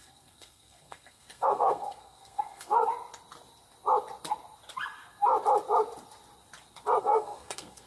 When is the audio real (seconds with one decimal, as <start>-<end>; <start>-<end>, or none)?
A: 2.9-7.0